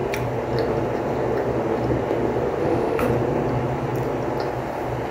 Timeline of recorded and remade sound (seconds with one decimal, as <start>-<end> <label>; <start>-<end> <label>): 0.0-2.6 recorded; 2.6-3.1 remade; 3.1-5.1 recorded